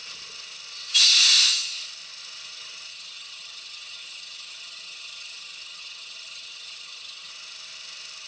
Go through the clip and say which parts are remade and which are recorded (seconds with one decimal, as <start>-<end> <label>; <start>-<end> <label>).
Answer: 0.0-2.9 recorded; 2.9-7.3 remade; 7.3-8.3 recorded

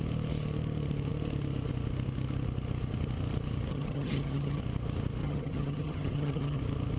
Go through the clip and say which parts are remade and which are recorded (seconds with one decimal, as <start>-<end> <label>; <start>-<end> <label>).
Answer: 0.0-3.7 recorded; 3.7-4.6 remade; 4.6-5.2 recorded; 5.2-6.6 remade; 6.6-7.0 recorded